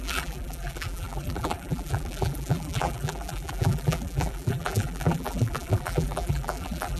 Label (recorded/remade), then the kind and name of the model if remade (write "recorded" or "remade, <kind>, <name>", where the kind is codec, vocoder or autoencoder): remade, vocoder, BigVGAN v2